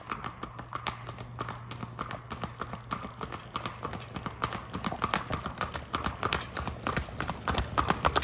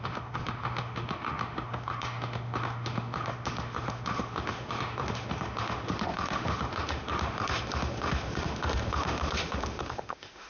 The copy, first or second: second